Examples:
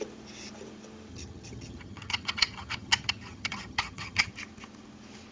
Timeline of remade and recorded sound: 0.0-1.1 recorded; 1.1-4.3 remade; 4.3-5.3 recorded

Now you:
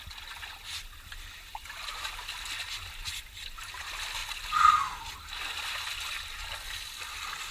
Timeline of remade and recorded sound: 0.0-7.5 recorded